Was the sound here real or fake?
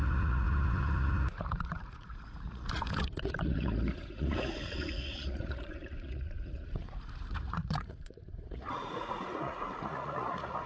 fake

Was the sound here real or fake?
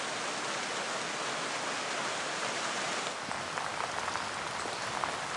real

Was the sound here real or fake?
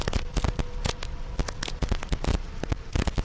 real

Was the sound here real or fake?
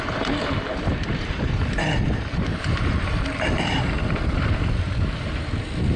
fake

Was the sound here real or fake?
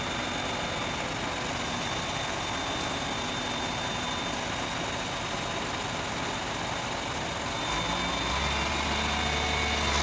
real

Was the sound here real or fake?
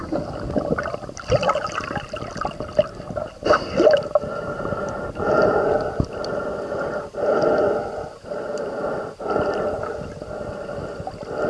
real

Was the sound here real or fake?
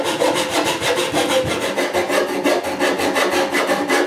real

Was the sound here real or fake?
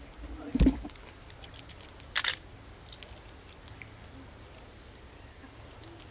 real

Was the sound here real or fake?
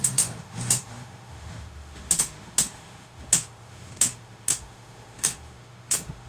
fake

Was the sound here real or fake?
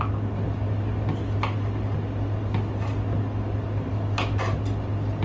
real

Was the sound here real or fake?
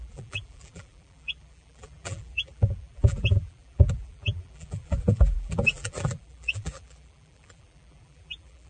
fake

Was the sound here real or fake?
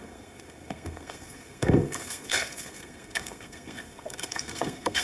fake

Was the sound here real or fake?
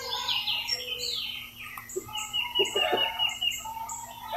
real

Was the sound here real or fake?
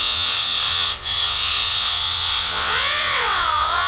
fake